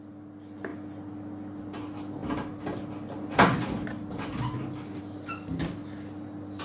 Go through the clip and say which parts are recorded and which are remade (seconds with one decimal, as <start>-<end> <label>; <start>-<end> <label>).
0.0-6.6 recorded